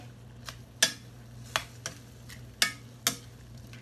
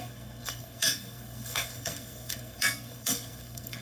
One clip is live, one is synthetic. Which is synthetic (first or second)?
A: second